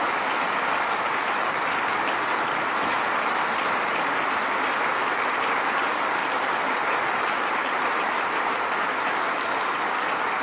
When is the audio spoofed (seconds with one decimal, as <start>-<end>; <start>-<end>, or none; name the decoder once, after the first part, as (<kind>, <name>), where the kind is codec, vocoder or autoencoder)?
6.2-9.1 (vocoder, BigVGAN v2)